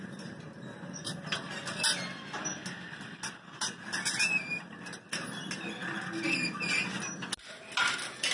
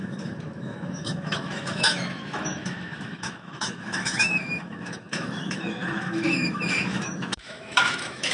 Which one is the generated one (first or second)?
second